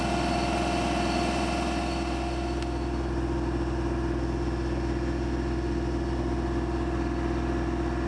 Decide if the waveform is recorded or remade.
recorded